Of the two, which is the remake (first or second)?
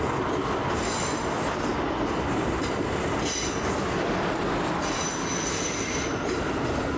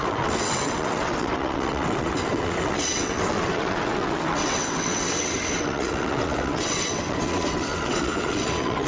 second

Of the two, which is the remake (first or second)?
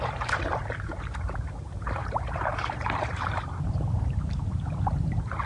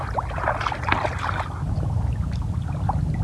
first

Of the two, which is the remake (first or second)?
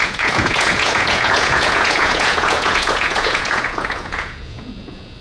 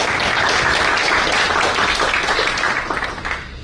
first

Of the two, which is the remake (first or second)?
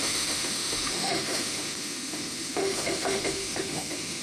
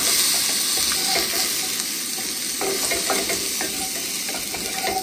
first